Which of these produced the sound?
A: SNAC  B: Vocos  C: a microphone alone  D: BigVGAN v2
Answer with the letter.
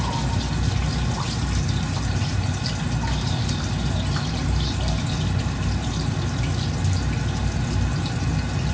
C